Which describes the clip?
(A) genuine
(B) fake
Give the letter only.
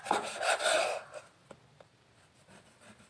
A